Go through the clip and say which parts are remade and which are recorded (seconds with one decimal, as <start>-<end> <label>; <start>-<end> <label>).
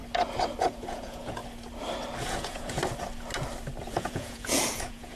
0.0-0.6 recorded; 0.6-1.4 remade; 1.4-2.2 recorded; 2.2-2.8 remade; 2.8-3.9 recorded; 3.9-5.2 remade